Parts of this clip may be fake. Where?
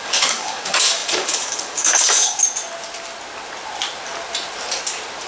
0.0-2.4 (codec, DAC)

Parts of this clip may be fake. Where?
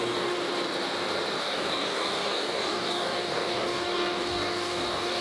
0.0-0.4 (codec, DAC); 1.4-5.2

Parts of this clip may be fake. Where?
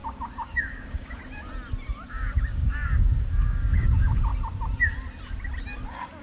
0.0-1.2 (codec, DAC); 2.1-4.3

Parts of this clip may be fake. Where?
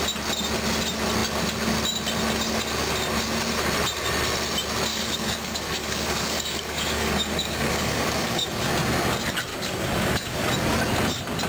4.9-8.6 (codec, DAC); 9.5-10.5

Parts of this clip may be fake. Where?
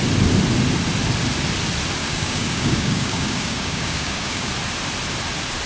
2.0-4.5 (codec, DAC)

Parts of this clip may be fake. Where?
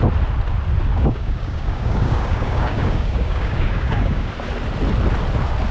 0.9-4.3 (codec, DAC)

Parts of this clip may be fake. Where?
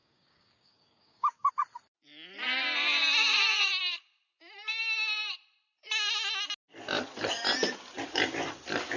0.0-1.5 (codec, DAC)